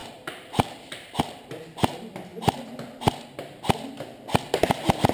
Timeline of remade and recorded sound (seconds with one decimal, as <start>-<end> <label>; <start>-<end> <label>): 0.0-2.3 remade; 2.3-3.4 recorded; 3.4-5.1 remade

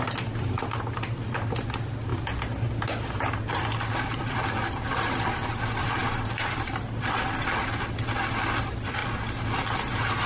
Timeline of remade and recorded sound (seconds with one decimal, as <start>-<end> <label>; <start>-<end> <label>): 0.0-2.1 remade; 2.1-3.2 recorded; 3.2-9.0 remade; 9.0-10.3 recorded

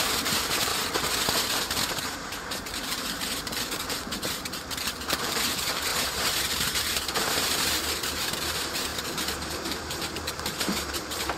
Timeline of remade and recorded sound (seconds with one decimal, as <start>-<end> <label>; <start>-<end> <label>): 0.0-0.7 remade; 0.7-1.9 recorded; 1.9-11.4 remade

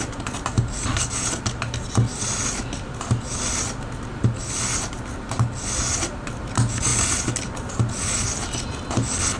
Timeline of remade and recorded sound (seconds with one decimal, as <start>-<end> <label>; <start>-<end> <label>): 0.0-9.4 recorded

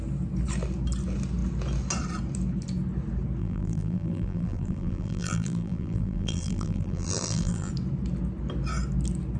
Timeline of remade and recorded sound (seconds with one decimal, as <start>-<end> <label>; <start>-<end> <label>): 0.0-3.4 recorded; 3.4-7.7 remade; 7.7-9.4 recorded